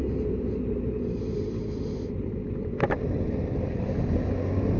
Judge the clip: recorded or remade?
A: recorded